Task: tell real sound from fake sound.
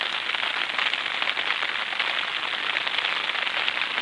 real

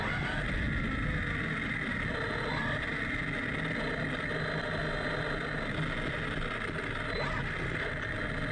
real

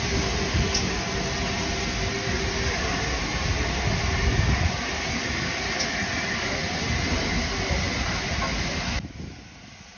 real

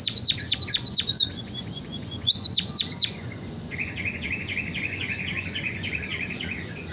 fake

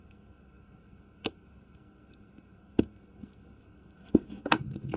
fake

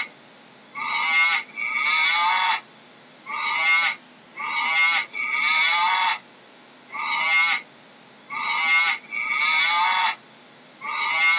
real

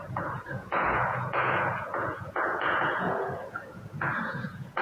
fake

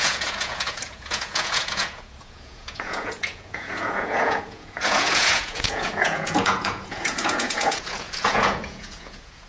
fake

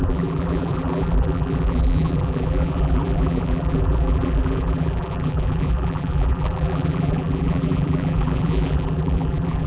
fake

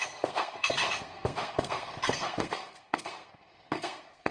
fake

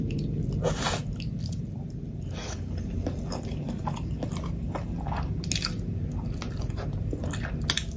real